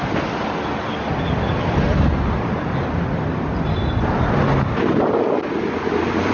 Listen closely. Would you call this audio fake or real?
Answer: real